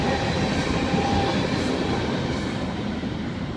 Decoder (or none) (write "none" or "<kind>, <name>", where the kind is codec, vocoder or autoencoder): vocoder, BigVGAN v2